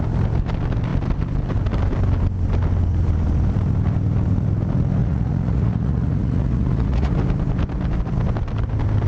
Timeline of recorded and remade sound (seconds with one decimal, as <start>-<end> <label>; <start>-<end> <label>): 0.0-5.0 recorded; 5.0-7.1 remade; 7.1-9.1 recorded